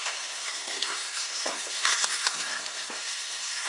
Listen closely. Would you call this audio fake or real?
fake